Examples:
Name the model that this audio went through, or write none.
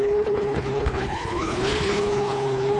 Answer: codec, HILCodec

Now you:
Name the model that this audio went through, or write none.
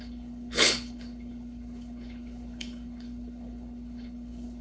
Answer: codec, HILCodec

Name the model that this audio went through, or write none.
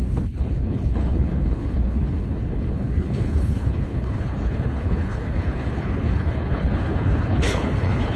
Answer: codec, HILCodec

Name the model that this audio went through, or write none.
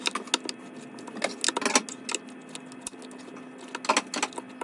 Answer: none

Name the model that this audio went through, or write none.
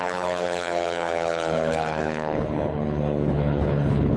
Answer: codec, HILCodec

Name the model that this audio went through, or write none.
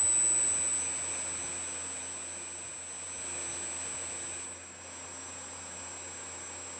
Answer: none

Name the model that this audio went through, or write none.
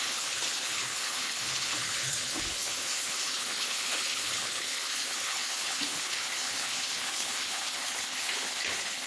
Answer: codec, HILCodec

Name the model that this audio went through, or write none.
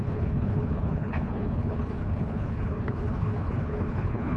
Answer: codec, HILCodec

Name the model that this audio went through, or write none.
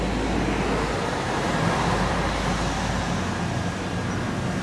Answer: none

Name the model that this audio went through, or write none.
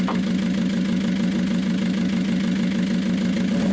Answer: none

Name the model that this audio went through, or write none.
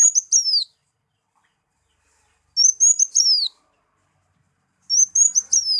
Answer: none